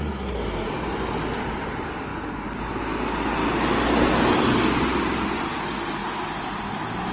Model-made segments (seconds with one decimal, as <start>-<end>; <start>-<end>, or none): none